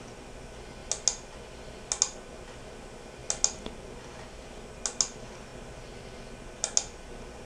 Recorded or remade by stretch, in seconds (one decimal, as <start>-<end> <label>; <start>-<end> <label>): 0.0-7.4 recorded